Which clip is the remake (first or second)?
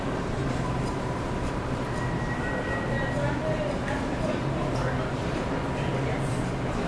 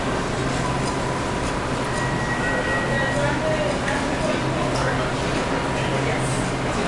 first